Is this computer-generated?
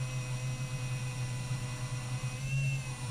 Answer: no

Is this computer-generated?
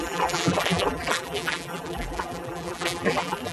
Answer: yes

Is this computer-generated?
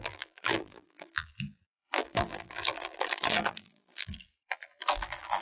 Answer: yes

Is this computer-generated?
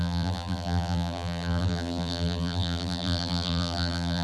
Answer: yes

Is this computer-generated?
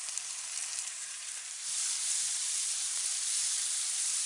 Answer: yes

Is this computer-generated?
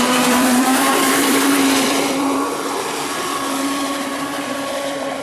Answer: yes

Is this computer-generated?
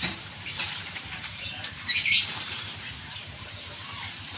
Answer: yes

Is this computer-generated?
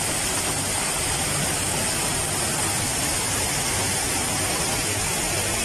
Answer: no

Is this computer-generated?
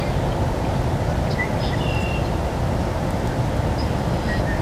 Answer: no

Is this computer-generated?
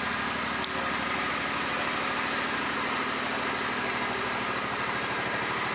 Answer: no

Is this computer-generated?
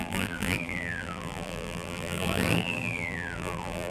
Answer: yes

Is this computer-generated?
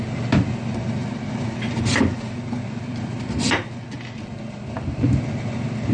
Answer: no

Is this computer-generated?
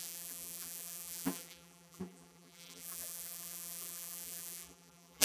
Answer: yes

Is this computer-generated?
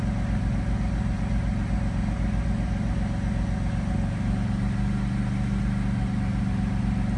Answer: no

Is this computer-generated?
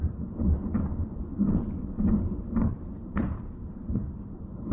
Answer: yes